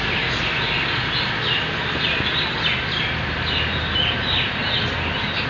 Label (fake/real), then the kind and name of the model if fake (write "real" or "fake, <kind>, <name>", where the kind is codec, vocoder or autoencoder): real